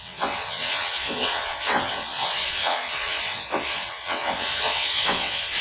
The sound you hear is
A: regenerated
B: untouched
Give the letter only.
A